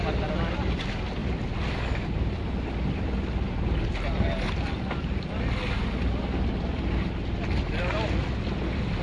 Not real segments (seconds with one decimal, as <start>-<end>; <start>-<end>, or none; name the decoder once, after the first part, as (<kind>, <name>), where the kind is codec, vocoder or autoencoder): none